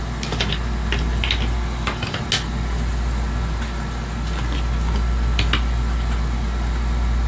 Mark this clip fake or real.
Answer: real